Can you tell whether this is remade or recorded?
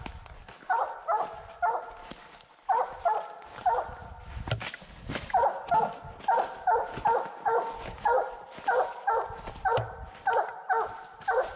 recorded